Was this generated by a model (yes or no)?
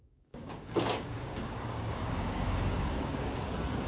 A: yes